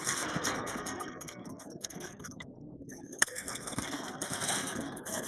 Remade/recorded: remade